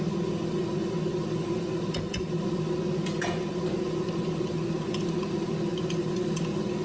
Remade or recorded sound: recorded